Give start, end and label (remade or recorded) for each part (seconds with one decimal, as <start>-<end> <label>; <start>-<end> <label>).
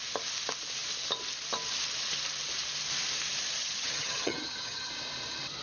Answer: 0.0-3.6 recorded; 3.6-4.9 remade; 4.9-5.6 recorded